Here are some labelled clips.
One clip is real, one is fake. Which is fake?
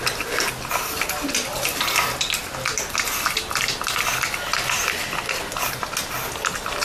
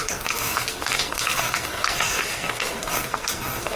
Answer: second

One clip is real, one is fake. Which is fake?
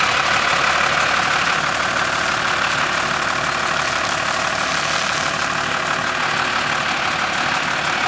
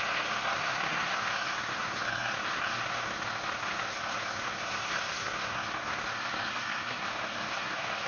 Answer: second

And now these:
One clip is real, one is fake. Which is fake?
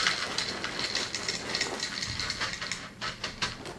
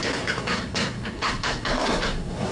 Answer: second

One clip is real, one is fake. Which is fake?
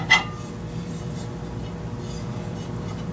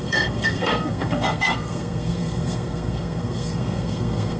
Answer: second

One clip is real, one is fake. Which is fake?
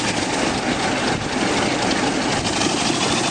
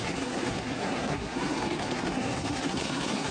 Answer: second